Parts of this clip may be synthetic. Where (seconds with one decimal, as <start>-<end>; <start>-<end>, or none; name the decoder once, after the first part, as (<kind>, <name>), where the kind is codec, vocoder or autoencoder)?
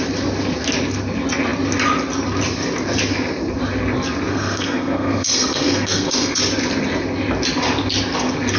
4.3-6.4 (codec, SNAC)